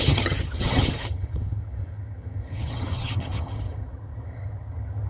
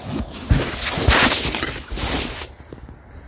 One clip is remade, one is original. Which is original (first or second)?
second